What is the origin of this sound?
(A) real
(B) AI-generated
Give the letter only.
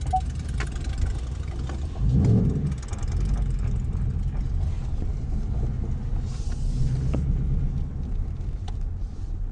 A